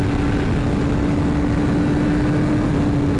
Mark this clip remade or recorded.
recorded